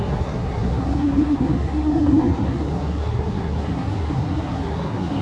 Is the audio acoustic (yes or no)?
no